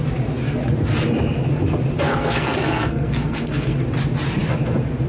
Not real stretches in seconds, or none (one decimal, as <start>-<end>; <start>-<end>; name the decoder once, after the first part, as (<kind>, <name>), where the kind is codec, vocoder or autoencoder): 2.1-3.8 (codec, SNAC)